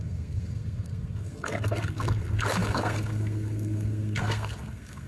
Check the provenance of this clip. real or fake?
fake